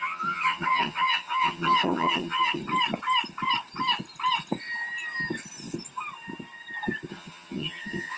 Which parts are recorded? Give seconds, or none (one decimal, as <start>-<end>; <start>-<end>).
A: 2.6-7.1